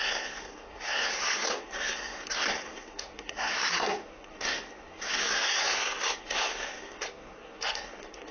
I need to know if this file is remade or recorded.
remade